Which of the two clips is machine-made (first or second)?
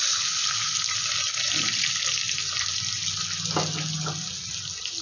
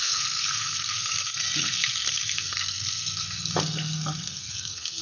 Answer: second